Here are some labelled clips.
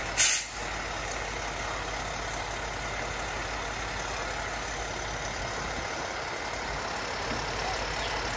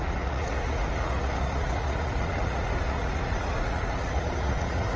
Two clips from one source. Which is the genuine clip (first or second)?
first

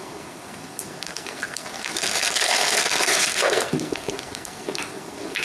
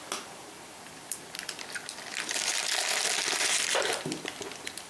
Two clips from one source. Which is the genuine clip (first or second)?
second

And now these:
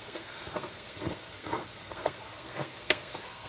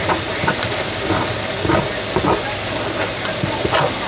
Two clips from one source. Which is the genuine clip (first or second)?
second